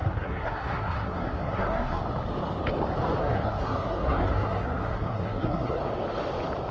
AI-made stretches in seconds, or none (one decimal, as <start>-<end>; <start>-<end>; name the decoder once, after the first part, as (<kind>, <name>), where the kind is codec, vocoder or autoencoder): 0.0-2.0 (codec, SNAC); 3.2-5.8